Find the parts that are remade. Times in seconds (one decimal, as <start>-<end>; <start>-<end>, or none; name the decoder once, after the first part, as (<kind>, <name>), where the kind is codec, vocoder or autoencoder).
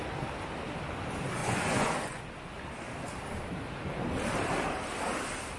1.4-2.2 (vocoder, Vocos)